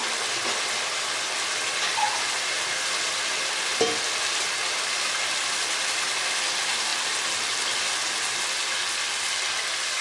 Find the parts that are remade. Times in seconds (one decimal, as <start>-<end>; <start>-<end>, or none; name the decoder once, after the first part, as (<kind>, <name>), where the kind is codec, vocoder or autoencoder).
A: none